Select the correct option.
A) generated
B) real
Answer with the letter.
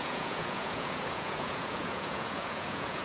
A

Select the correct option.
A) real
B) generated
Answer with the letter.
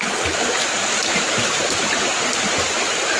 A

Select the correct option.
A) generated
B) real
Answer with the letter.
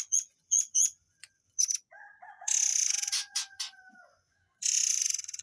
A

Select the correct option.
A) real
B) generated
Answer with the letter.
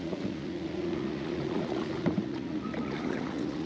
B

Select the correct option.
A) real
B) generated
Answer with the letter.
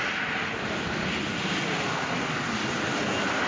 A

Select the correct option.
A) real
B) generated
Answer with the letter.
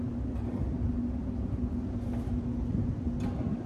A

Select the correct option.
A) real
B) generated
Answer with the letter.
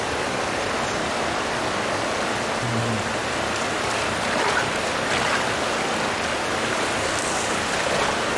A